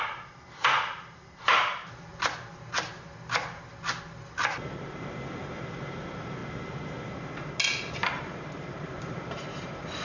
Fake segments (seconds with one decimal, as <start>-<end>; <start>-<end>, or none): 0.0-2.1; 5.5-6.4; 7.9-10.0

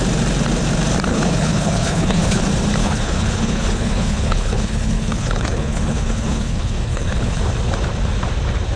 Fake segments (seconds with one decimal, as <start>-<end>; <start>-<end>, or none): 1.1-2.4; 2.8-7.4

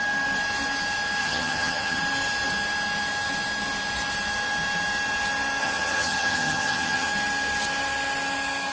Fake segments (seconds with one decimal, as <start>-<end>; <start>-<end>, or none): 1.2-2.0; 5.6-7.1

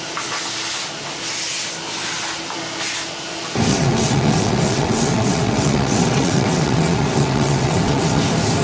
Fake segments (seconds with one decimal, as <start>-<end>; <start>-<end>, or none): 3.7-8.2